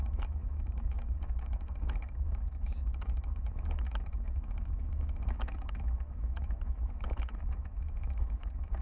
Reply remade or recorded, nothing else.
remade